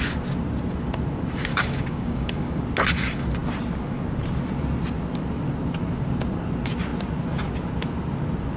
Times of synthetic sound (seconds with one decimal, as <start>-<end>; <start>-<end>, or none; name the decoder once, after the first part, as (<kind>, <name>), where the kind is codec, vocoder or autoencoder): 1.5-2.6 (codec, DAC)